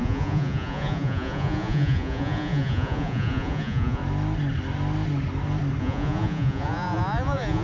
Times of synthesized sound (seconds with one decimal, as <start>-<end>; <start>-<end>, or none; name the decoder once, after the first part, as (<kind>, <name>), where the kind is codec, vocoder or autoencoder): 0.0-4.0 (vocoder, Vocos); 5.8-7.6